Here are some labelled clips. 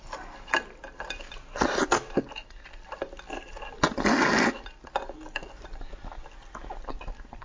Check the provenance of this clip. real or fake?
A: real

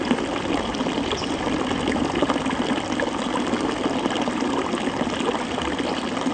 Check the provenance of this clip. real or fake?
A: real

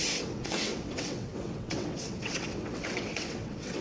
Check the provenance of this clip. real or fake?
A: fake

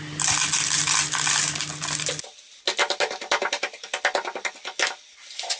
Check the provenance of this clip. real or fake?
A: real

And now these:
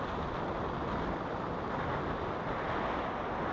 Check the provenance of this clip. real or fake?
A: real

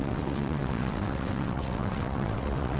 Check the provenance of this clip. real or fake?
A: fake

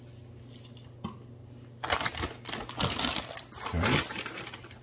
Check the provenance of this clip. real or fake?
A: real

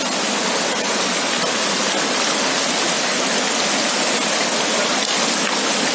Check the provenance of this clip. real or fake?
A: real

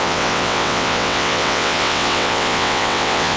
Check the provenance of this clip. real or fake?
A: fake